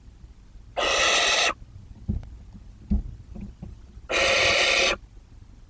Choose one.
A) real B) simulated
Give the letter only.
A